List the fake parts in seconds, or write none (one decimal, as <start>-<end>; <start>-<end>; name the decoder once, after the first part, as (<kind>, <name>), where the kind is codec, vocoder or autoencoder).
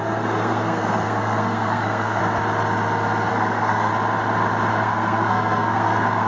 0.0-2.2 (codec, SNAC); 3.3-3.9; 4.7-6.3